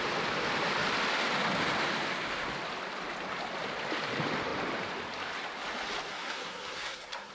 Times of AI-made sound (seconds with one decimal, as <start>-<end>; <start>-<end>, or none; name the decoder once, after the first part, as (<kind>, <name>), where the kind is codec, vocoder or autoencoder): 6.1-7.3 (codec, SNAC)